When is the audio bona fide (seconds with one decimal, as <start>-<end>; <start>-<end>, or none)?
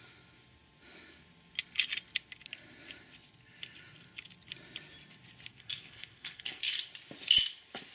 0.0-5.5; 6.6-7.9